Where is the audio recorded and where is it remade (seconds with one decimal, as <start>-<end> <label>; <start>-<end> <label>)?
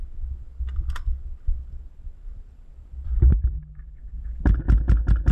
0.0-3.0 recorded; 3.0-3.6 remade; 3.6-5.3 recorded